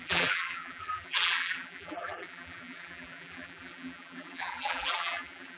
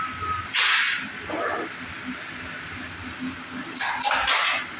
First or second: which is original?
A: second